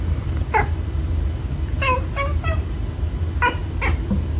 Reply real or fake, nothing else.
real